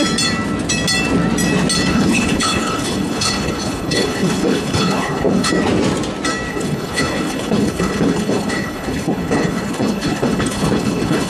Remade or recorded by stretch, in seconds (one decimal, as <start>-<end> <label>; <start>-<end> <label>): 0.0-1.9 recorded; 1.9-5.5 remade; 5.5-6.5 recorded; 6.5-11.3 remade